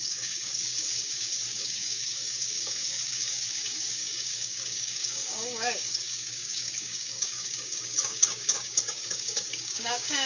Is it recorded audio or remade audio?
remade